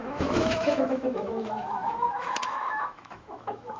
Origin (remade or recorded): remade